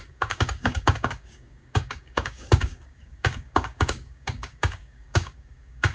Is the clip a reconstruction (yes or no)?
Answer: yes